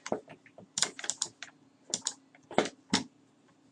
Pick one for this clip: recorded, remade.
recorded